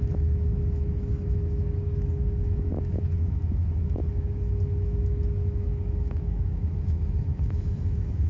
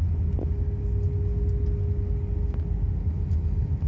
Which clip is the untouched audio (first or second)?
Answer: second